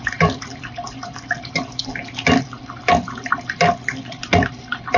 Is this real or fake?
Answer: real